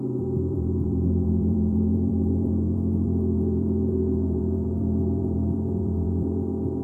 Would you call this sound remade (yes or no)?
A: yes